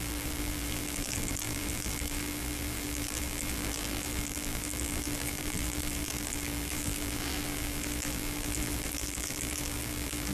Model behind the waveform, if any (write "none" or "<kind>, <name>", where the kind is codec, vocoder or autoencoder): vocoder, BigVGAN v2